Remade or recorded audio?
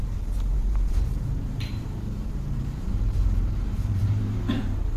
remade